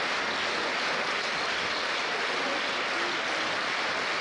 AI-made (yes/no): no